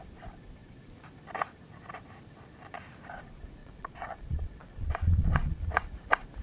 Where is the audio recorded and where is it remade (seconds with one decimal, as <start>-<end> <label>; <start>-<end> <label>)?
0.0-3.6 recorded; 3.6-5.9 remade; 5.9-6.4 recorded